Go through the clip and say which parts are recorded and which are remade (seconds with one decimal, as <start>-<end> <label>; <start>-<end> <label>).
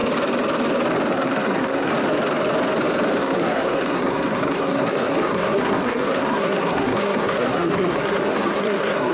0.0-1.1 recorded; 1.1-1.9 remade; 1.9-3.2 recorded; 3.2-9.1 remade